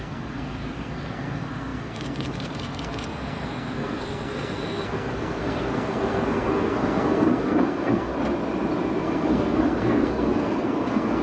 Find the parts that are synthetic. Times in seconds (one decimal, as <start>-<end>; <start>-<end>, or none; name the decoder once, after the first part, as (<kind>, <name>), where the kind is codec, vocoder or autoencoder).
0.0-8.1 (codec, SNAC); 9.0-11.2